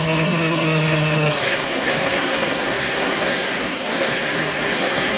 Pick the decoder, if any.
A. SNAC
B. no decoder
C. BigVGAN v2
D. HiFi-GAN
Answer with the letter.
A